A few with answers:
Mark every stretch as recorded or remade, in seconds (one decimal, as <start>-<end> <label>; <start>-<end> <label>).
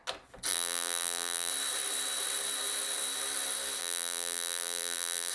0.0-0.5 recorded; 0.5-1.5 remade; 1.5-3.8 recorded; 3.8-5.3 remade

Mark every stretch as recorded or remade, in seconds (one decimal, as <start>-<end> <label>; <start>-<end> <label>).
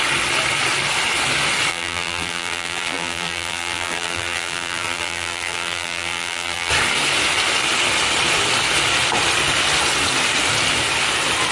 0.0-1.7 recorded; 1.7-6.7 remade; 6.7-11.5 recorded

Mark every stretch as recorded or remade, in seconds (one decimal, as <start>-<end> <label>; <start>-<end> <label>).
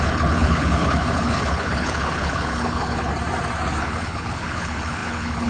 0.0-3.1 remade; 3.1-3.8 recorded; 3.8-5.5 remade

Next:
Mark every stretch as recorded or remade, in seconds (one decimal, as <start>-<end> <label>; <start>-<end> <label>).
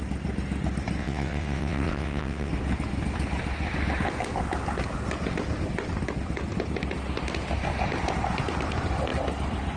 0.0-1.0 recorded; 1.0-2.5 remade; 2.5-9.8 recorded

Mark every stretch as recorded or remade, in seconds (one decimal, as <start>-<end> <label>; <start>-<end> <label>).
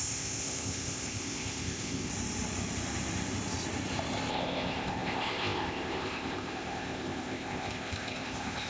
0.0-2.1 remade; 2.1-4.3 recorded; 4.3-8.7 remade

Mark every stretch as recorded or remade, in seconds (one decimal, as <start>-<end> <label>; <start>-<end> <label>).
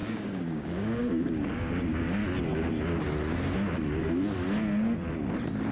0.0-2.2 remade; 2.2-5.7 recorded